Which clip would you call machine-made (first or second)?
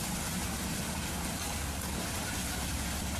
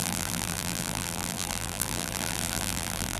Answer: second